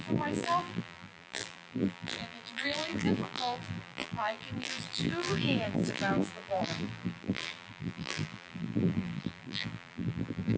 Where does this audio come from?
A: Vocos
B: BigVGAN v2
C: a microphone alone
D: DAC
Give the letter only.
B